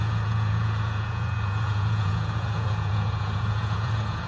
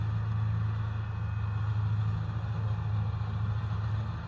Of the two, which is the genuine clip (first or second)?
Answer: second